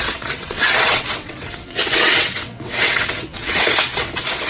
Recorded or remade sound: remade